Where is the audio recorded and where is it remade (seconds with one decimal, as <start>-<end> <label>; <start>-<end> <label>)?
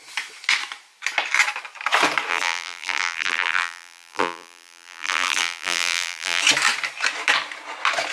0.0-2.3 recorded; 2.3-6.4 remade; 6.4-8.1 recorded